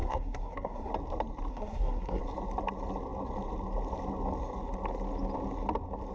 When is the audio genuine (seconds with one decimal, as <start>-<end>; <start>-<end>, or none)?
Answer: 0.9-1.5; 2.2-6.1